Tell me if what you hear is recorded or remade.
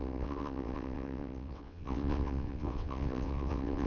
remade